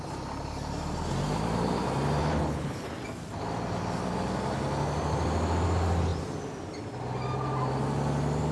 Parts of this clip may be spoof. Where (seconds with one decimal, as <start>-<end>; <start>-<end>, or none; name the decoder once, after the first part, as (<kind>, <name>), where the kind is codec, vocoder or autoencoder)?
2.2-2.9 (codec, HILCodec)